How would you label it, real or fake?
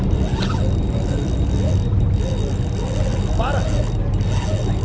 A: real